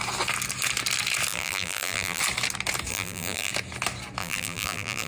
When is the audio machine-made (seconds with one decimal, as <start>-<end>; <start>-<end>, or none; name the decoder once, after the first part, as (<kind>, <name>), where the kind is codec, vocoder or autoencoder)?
1.3-2.2 (vocoder, BigVGAN v2); 2.9-3.5; 4.2-5.1